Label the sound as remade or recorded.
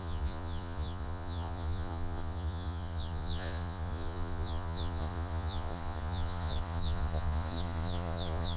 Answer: remade